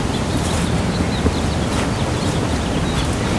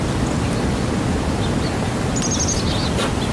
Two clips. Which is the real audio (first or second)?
second